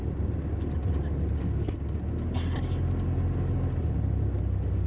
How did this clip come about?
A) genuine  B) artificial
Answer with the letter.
A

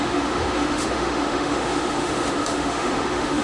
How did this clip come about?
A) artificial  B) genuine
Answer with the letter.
A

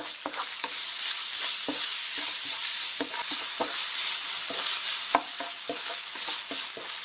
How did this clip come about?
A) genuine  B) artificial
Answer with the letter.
A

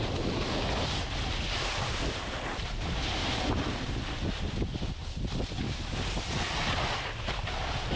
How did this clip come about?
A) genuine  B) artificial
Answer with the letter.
A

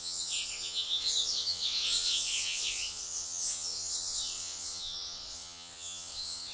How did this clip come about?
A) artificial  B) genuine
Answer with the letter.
A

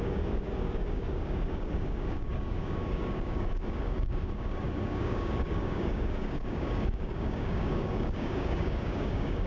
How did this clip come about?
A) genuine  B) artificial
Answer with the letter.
B